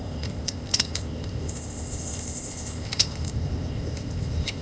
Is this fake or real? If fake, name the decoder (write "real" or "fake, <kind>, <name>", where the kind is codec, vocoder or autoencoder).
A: fake, codec, ZipCodec